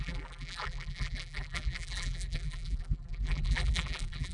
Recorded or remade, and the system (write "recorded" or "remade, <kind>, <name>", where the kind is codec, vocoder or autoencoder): remade, vocoder, BigVGAN v2